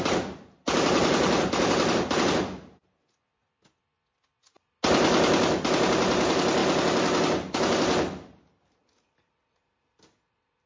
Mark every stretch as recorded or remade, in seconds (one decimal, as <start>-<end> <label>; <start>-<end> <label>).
0.0-10.7 recorded